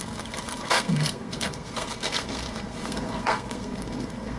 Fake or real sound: fake